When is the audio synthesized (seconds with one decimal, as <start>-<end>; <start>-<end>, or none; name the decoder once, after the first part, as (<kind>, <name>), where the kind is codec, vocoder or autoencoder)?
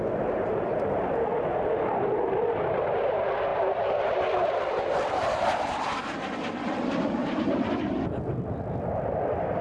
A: 7.2-7.7 (vocoder, BigVGAN v2)